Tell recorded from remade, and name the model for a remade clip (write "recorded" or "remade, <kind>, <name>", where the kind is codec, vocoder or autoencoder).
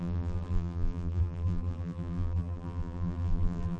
remade, vocoder, BigVGAN v2